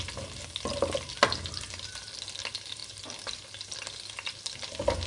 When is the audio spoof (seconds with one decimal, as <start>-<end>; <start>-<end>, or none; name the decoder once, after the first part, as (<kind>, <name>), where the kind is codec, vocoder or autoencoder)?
none